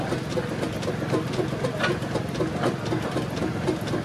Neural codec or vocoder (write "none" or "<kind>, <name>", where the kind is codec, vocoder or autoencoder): none